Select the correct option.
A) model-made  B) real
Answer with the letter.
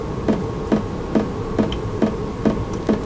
B